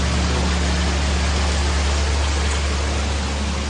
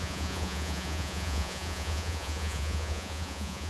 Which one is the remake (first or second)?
second